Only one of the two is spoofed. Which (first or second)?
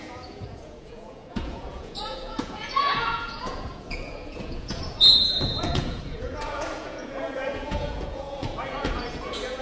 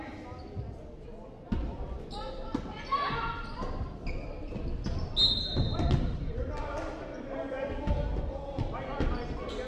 first